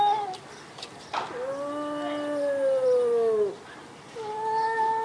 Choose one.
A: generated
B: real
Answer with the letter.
A